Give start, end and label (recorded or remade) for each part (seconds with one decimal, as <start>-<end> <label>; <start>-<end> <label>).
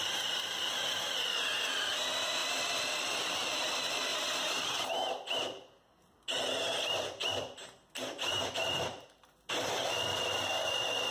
0.0-4.1 remade; 4.1-8.4 recorded; 8.4-11.1 remade